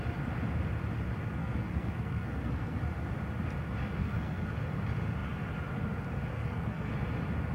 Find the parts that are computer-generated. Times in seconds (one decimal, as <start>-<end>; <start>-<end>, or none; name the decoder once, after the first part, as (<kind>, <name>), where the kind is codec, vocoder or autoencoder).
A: 1.4-2.8 (codec, SNAC); 4.0-4.6; 6.3-6.9